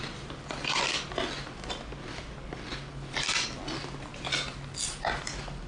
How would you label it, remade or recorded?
recorded